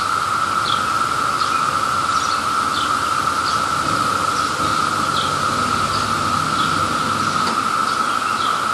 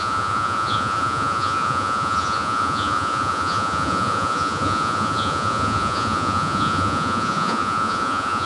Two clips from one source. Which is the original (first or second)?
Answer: first